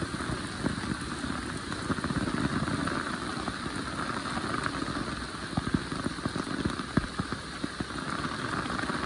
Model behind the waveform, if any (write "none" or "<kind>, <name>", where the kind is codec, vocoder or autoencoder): none